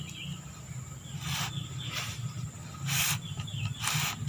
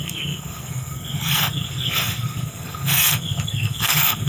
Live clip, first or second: first